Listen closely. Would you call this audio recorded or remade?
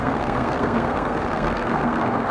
remade